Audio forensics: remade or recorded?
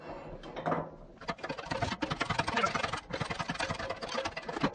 recorded